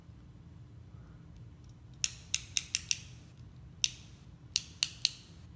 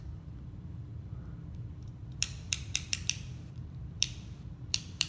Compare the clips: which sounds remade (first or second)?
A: second